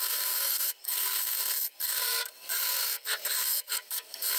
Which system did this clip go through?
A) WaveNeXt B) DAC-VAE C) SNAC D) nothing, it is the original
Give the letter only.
C